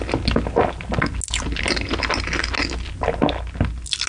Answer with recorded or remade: recorded